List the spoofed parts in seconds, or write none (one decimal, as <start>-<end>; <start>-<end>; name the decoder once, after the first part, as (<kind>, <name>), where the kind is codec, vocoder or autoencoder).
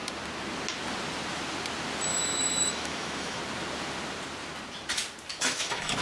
2.1-3.4 (autoencoder, DAC-VAE); 5.3-6.0